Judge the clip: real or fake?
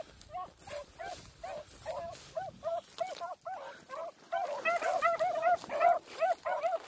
real